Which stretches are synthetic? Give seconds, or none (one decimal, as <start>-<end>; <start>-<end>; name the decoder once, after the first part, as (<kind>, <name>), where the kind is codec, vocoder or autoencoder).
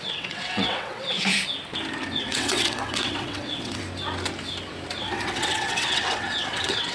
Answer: 0.0-1.3 (vocoder, WaveNeXt); 2.2-3.8; 5.0-6.9